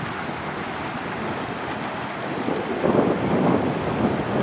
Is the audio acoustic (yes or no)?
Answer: yes